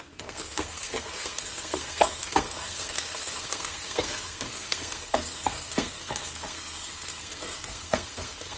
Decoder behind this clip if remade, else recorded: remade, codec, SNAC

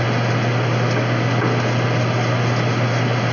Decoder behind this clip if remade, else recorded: recorded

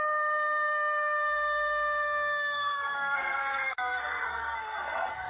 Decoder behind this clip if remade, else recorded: remade, codec, SNAC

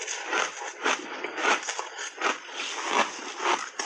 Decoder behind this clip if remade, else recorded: recorded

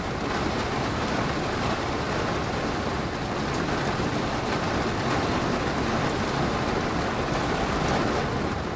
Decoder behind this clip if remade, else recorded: recorded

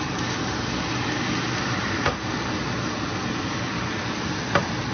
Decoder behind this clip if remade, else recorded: recorded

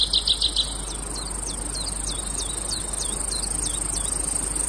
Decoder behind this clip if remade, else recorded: recorded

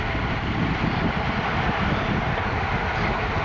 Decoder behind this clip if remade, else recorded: recorded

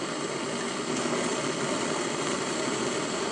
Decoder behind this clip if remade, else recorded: remade, vocoder, BigVGAN v2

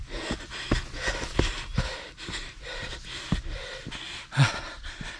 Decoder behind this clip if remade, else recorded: recorded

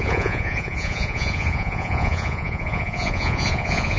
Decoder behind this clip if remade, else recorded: remade, vocoder, Vocos